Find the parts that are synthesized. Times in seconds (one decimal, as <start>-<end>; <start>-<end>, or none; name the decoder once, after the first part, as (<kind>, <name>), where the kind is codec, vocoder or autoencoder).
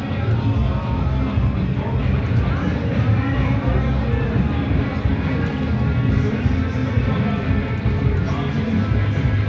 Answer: none